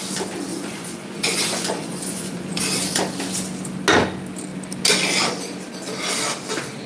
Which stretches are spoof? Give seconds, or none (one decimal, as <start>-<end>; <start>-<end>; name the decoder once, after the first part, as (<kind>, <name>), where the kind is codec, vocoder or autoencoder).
0.5-2.6 (vocoder, Vocos)